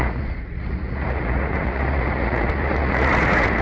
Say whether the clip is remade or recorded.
remade